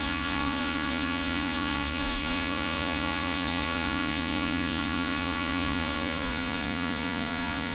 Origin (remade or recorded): remade